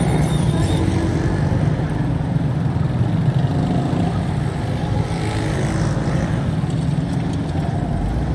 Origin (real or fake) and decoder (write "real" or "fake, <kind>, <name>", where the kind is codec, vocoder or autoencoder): real